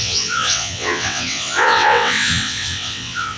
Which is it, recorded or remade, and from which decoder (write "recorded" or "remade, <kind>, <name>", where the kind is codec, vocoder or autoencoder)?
remade, vocoder, WaveNeXt